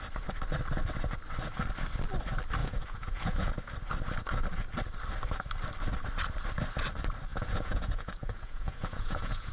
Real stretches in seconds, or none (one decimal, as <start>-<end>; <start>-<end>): 0.0-2.6; 3.5-7.3